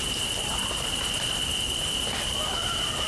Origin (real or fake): fake